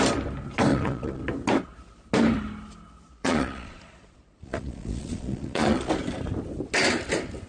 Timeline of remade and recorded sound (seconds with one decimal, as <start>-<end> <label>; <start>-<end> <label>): 0.0-0.7 recorded; 0.7-1.2 remade; 1.2-3.1 recorded; 3.1-5.9 remade; 5.9-7.5 recorded